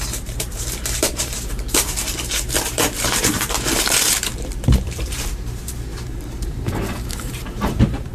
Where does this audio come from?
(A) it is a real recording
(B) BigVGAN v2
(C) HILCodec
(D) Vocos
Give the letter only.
B